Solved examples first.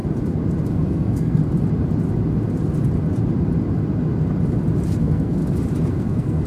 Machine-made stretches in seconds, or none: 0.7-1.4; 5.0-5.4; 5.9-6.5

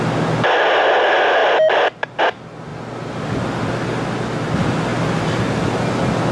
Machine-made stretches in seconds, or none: none